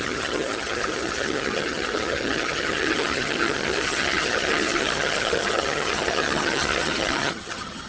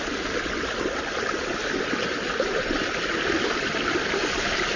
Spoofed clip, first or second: first